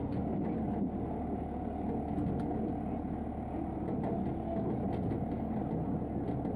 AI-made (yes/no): no